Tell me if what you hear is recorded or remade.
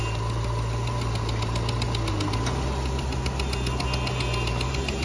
recorded